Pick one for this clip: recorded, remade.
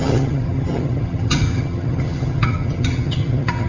remade